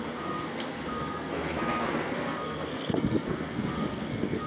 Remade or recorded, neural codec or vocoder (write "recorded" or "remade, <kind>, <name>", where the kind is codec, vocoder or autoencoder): remade, codec, SNAC